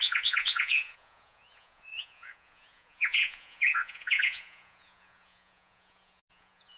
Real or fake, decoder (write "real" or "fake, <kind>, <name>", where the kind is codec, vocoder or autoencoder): fake, vocoder, Vocos